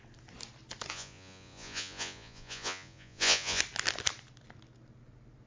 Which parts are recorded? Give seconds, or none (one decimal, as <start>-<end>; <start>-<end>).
0.0-0.9; 3.6-5.5